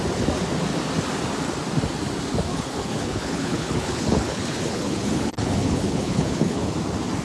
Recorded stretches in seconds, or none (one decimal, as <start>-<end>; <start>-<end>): 0.0-2.5; 6.7-7.2